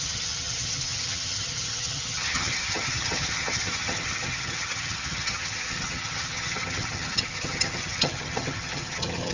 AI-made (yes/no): yes